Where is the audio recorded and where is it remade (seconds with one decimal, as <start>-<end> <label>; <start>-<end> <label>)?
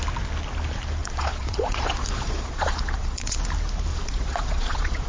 0.0-1.0 recorded; 1.0-3.4 remade; 3.4-3.9 recorded; 3.9-5.1 remade